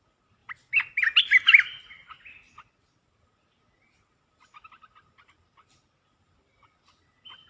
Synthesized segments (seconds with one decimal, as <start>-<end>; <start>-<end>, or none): none